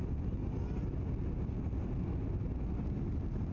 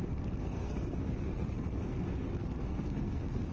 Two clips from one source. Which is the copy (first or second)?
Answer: second